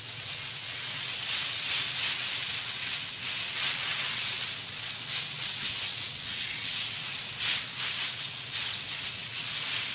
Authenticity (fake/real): fake